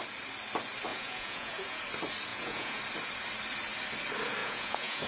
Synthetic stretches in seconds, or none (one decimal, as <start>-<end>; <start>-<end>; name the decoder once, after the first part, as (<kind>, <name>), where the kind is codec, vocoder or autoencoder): 0.9-1.8 (vocoder, Vocos); 2.3-2.8; 4.4-5.1